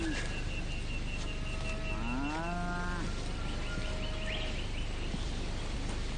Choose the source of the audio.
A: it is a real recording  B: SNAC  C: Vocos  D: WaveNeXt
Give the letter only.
A